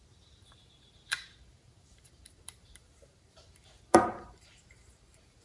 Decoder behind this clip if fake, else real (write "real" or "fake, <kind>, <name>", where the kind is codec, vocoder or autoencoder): fake, vocoder, BigVGAN v2